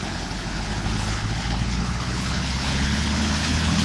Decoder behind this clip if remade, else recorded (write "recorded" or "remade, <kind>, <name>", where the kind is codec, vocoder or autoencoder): remade, codec, HILCodec